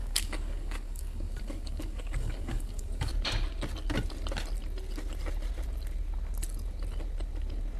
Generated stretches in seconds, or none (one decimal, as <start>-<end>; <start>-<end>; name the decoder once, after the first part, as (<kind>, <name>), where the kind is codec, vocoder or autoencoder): 0.0-3.1 (codec, DAC)